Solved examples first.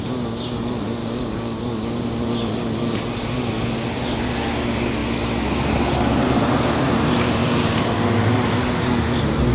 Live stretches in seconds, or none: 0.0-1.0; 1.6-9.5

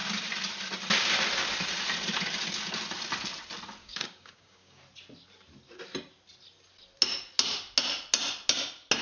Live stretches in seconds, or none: 0.0-3.8; 4.8-9.0

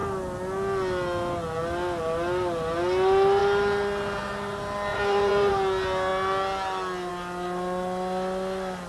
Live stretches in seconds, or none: 0.0-4.9; 5.5-8.9

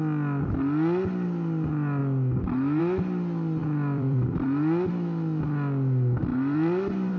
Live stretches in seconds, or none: 0.0-3.6; 4.9-6.3

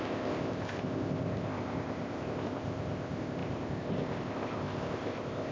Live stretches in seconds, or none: none